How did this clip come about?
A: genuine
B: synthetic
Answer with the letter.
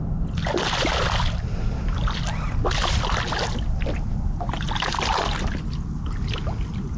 A